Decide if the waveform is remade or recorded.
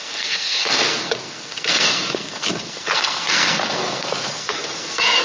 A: remade